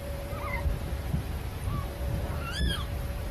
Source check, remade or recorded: remade